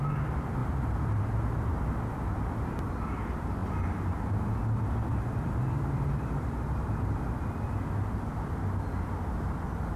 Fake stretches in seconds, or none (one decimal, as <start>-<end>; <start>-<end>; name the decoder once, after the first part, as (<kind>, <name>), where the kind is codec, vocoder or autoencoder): 0.6-1.2 (vocoder, BigVGAN v2); 5.1-7.3